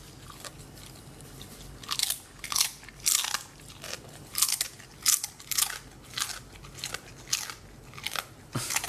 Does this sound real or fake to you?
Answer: real